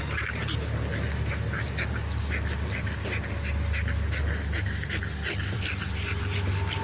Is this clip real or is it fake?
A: real